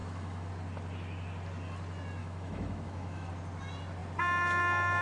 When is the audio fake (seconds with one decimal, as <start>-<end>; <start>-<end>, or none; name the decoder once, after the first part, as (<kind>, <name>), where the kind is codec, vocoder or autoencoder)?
0.0-0.5 (autoencoder, DAC-VAE); 2.2-3.3